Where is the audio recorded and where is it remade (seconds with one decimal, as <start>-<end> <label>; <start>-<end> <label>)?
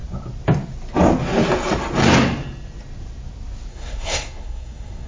0.0-3.7 recorded; 3.7-5.1 remade